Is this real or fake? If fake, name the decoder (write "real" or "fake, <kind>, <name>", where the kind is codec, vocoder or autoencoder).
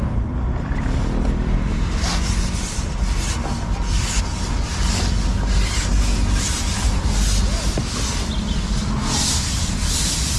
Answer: real